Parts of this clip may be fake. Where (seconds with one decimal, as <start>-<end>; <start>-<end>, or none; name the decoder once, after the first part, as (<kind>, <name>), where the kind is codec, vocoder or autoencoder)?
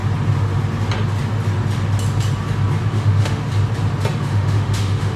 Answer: 2.9-3.4 (autoencoder, DAC-VAE); 4.2-5.2